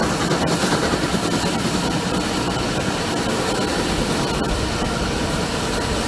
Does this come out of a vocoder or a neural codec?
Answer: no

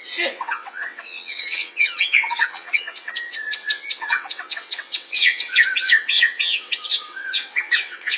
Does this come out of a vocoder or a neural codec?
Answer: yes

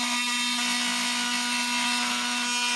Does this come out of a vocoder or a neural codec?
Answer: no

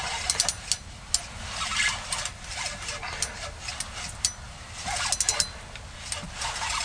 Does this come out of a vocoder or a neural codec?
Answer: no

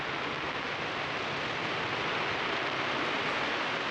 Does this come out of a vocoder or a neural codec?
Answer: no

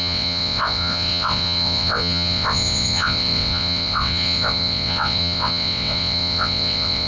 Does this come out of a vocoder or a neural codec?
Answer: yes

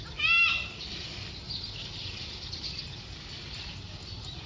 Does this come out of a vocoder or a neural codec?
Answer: no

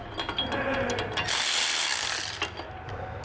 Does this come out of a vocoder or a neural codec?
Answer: no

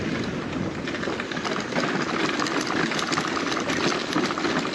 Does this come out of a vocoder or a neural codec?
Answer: no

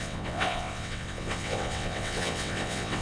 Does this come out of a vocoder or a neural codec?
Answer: yes